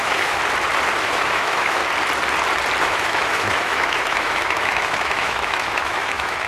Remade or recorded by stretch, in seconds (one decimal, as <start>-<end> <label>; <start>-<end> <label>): 0.0-0.4 remade; 0.4-1.0 recorded; 1.0-1.8 remade; 1.8-2.8 recorded; 2.8-6.5 remade